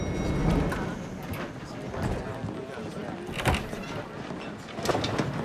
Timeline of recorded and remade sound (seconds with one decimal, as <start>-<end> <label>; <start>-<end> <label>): 0.0-5.4 recorded